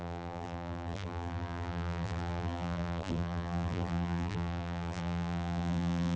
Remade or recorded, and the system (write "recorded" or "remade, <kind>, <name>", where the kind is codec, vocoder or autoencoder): remade, vocoder, BigVGAN v2